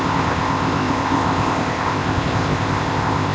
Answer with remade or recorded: remade